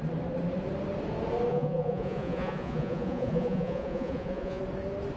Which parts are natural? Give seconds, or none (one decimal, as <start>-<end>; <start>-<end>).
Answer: 0.0-1.5; 4.6-5.2